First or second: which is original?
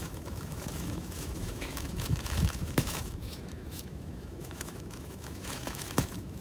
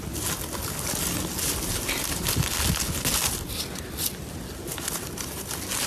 second